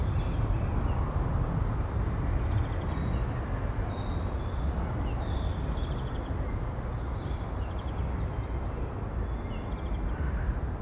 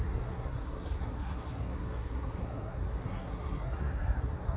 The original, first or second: first